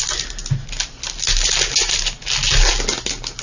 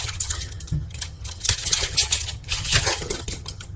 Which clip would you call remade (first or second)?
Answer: second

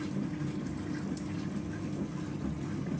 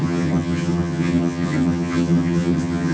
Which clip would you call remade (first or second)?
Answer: second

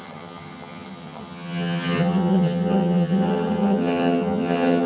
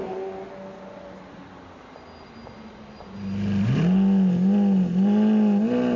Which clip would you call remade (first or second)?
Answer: first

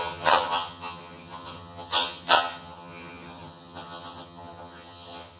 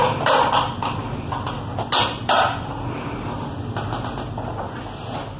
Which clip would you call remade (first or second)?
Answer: first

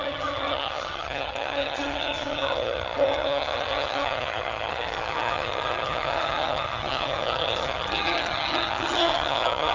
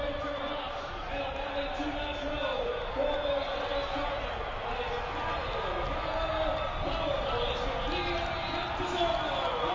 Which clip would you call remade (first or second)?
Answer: first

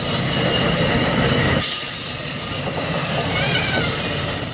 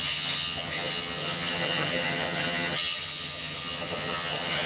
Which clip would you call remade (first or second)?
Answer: second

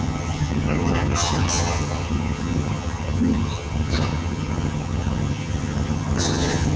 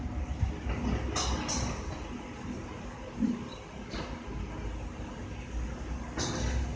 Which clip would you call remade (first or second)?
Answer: first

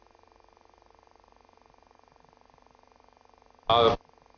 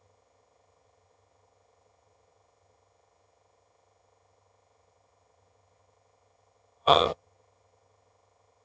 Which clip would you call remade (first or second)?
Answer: second